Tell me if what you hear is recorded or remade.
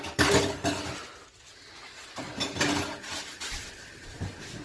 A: recorded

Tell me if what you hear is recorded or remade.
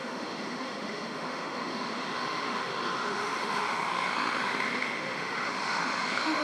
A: remade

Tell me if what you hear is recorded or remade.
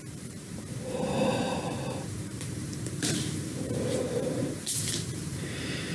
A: remade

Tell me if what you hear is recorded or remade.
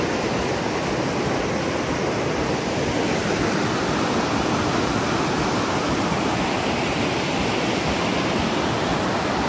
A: recorded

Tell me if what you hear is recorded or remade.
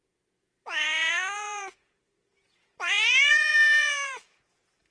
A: remade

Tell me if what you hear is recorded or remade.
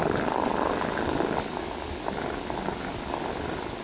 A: recorded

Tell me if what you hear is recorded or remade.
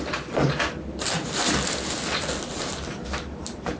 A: recorded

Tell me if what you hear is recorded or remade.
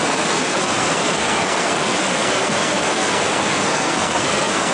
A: remade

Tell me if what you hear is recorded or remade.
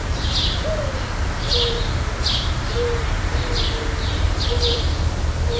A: remade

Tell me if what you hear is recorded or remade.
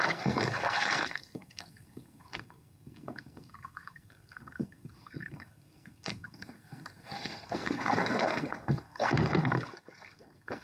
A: remade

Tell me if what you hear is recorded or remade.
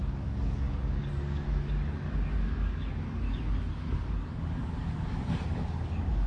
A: remade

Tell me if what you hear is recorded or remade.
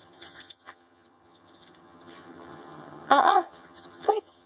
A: remade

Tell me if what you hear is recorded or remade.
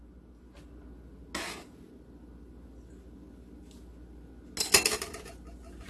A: recorded